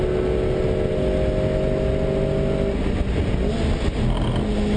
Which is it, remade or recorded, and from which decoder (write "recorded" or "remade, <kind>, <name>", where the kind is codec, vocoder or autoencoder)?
recorded